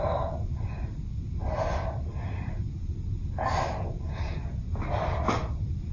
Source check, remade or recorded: recorded